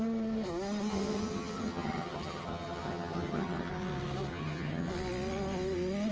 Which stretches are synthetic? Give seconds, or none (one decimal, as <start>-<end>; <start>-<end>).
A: 0.9-3.7; 4.3-4.9

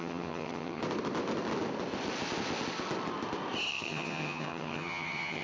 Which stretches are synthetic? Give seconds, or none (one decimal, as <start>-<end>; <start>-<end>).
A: 0.0-0.8; 3.7-5.4